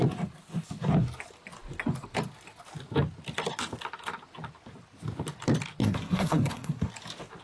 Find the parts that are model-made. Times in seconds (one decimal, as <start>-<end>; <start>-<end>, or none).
5.8-6.9